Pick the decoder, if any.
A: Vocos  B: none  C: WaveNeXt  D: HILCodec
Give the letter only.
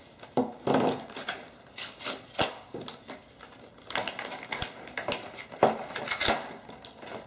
B